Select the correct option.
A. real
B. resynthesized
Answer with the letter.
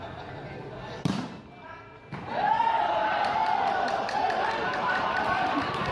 B